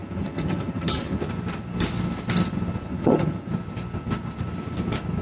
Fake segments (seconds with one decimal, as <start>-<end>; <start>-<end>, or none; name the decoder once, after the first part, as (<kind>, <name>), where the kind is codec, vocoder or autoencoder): 0.0-1.2 (vocoder, HiFi-GAN); 2.9-3.5